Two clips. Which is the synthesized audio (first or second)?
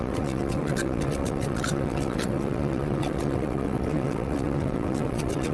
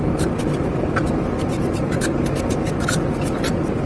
first